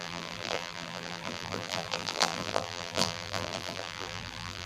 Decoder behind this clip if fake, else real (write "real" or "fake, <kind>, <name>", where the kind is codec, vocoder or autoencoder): fake, vocoder, BigVGAN v2